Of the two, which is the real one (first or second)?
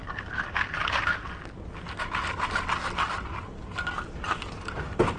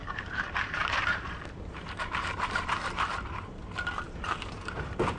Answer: first